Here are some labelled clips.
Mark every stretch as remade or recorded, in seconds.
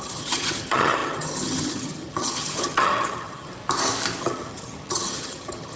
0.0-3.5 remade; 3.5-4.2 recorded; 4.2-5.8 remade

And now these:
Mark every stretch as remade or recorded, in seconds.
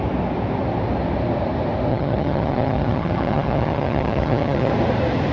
0.0-1.9 recorded; 1.9-4.7 remade; 4.7-5.3 recorded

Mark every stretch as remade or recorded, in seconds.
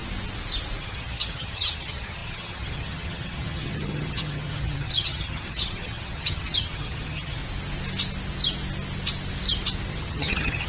0.0-0.8 recorded; 0.8-7.4 remade; 7.4-9.9 recorded; 9.9-10.7 remade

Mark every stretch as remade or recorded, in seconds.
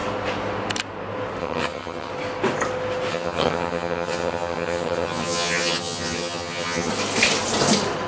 0.0-1.4 recorded; 1.4-2.1 remade; 2.1-3.1 recorded; 3.1-6.9 remade; 6.9-8.1 recorded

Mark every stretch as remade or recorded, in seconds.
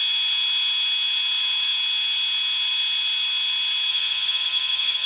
0.0-3.9 recorded; 3.9-5.1 remade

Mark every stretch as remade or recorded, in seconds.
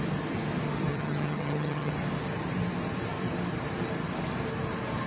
0.0-0.9 recorded; 0.9-1.9 remade; 1.9-5.1 recorded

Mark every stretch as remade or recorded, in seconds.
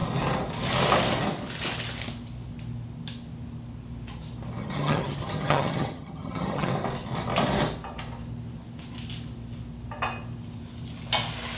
0.0-4.6 recorded; 4.6-6.7 remade; 6.7-11.6 recorded